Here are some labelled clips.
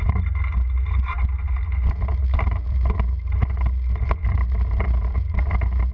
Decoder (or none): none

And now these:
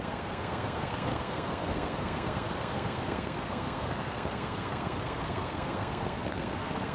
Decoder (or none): codec, SNAC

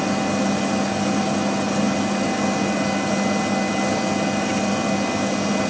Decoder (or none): none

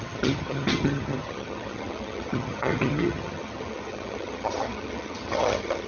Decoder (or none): vocoder, HiFi-GAN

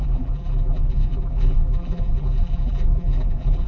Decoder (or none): vocoder, BigVGAN v2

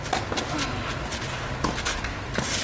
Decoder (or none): none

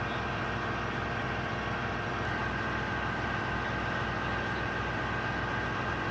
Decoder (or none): none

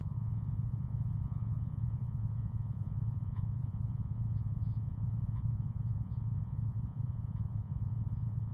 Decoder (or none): vocoder, Vocos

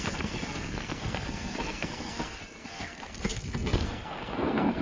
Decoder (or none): codec, SNAC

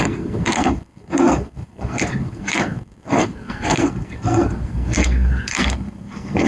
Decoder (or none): codec, SNAC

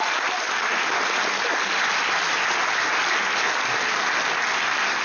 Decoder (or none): none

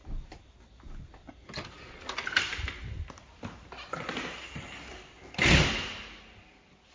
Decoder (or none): none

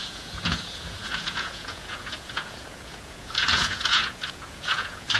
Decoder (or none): vocoder, Vocos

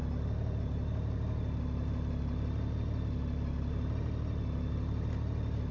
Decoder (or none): none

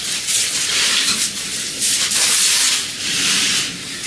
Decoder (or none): vocoder, BigVGAN v2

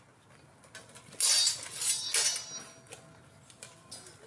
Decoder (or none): none